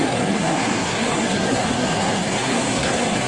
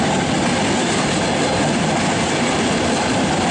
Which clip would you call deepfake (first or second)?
first